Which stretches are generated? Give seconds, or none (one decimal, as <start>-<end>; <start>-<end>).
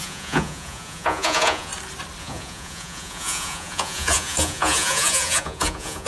0.0-1.7; 2.2-6.1